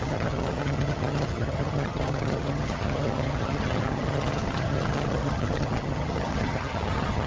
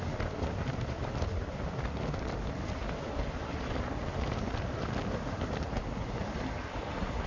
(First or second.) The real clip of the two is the second